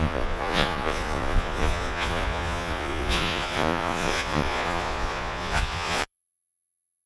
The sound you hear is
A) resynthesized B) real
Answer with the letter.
A